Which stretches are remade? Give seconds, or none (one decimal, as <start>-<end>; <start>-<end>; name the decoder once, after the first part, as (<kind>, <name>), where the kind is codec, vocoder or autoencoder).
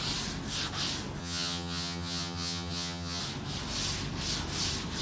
1.2-3.2 (vocoder, HiFi-GAN)